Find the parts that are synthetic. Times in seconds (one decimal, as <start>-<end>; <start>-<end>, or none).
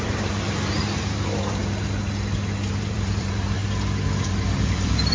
0.0-1.6; 2.7-3.6; 4.2-5.1